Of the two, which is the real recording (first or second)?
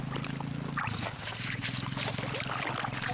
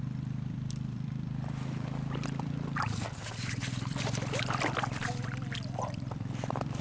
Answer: first